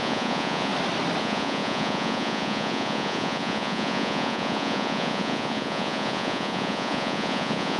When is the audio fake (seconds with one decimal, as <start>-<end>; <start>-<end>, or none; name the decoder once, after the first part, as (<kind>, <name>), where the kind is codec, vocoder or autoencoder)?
0.0-0.7 (vocoder, Vocos); 1.2-7.8

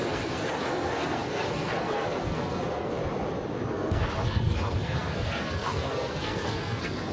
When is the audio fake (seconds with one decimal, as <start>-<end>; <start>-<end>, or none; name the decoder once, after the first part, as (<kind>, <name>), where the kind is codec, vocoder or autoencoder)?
0.0-3.0 (codec, SNAC); 3.7-7.1

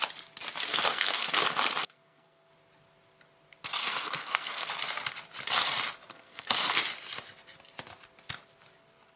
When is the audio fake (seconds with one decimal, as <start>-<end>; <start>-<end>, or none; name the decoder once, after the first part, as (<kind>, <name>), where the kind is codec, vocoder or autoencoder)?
0.7-1.4 (codec, SNAC); 1.8-2.5; 3.8-4.7; 6.1-6.8

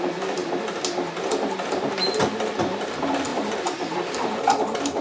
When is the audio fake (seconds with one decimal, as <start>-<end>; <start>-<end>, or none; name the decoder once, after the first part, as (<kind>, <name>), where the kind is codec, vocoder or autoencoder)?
3.3-5.0 (vocoder, BigVGAN v2)